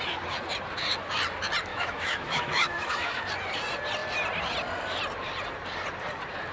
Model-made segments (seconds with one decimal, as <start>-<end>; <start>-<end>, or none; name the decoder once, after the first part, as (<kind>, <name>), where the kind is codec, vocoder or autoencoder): 1.7-3.2 (autoencoder, DAC-VAE)